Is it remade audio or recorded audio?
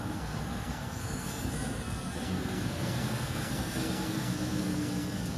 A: remade